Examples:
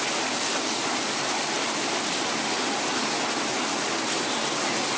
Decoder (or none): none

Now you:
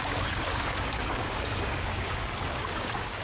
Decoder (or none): codec, DAC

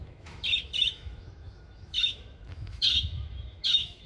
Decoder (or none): autoencoder, DAC-VAE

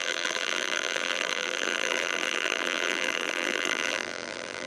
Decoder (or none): vocoder, BigVGAN v2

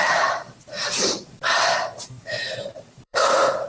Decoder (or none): vocoder, BigVGAN v2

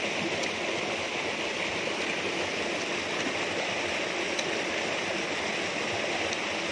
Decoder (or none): none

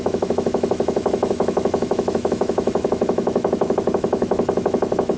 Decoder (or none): autoencoder, DAC-VAE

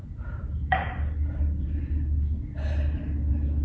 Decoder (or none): none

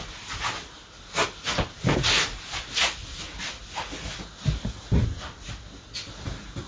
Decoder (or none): none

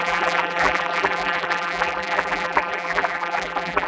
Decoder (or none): vocoder, BigVGAN v2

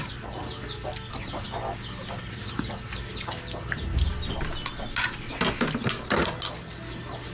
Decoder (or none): none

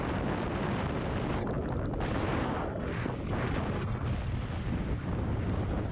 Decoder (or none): none